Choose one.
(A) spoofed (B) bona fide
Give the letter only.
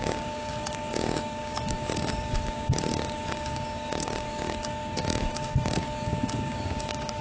A